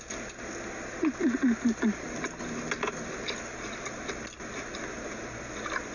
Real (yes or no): yes